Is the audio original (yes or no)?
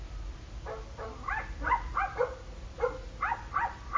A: yes